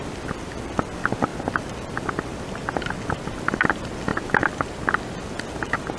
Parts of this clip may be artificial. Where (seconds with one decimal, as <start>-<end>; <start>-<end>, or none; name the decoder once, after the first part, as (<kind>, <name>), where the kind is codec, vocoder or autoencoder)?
none